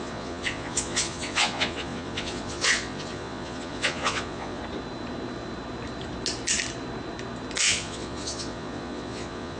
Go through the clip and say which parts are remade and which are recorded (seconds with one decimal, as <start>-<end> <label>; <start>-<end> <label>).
0.0-4.6 remade; 4.6-7.6 recorded; 7.6-9.6 remade